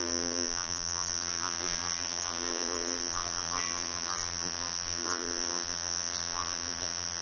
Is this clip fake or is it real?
fake